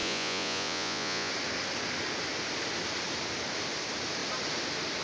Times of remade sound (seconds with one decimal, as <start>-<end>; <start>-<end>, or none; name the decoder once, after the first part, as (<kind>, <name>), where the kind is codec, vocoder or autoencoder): 0.0-1.3 (vocoder, Vocos)